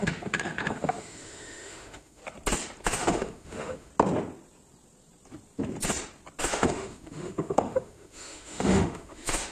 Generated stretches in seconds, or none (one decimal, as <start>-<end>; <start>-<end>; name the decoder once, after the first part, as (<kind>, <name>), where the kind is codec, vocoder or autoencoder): 0.0-2.2 (autoencoder, DAC-VAE); 2.8-3.9; 6.4-9.5